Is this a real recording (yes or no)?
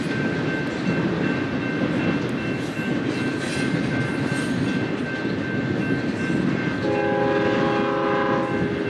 yes